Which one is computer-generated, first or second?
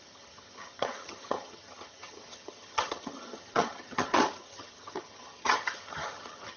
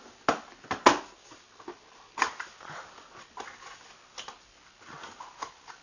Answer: first